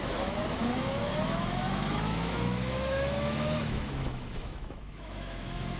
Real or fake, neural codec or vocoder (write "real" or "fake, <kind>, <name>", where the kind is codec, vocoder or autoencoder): fake, autoencoder, DAC-VAE